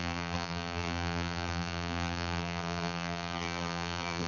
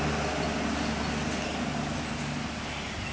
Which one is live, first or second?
second